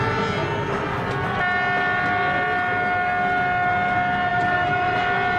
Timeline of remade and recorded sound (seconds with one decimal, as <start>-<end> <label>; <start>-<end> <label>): 0.0-4.3 recorded; 4.3-5.0 remade; 5.0-5.4 recorded